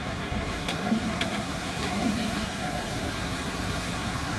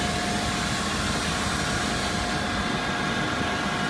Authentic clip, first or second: second